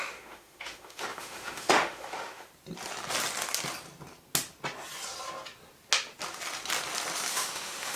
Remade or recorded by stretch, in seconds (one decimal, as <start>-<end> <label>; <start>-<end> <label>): 0.0-2.5 remade; 2.5-7.3 recorded; 7.3-8.0 remade